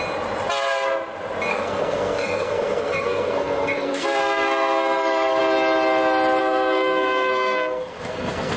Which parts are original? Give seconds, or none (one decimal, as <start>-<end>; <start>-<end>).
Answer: 0.0-1.5; 5.4-6.4